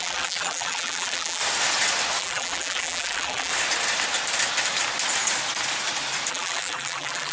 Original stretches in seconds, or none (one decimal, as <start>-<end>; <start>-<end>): 1.4-2.2; 3.5-6.3